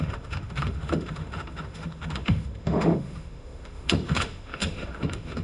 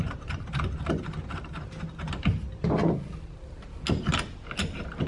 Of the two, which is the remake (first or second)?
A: first